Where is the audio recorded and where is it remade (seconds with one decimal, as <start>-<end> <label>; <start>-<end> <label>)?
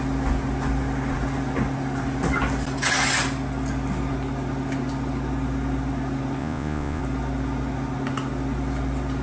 0.0-6.4 recorded; 6.4-7.0 remade; 7.0-9.2 recorded